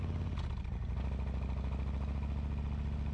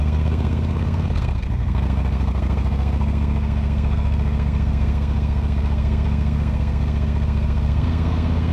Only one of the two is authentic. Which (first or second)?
first